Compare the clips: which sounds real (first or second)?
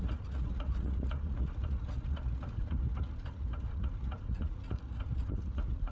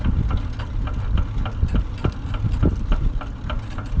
second